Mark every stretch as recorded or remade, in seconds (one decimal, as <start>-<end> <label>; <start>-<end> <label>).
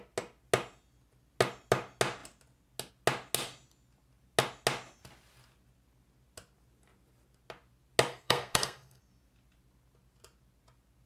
0.0-8.1 recorded; 8.1-9.0 remade; 9.0-11.1 recorded